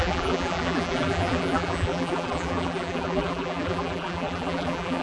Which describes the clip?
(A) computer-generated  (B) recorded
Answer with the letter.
A